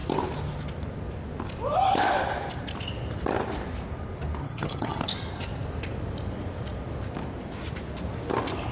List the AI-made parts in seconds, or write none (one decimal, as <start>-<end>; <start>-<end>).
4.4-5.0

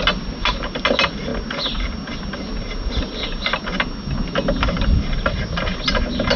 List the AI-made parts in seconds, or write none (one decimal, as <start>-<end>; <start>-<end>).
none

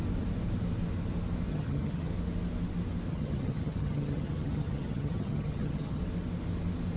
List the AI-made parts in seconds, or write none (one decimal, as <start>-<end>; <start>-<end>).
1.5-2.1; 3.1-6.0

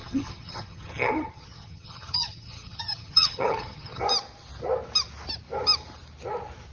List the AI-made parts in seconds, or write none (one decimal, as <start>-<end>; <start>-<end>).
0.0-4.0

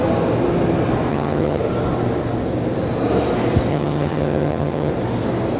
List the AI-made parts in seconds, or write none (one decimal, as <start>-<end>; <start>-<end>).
1.1-1.6; 3.7-4.9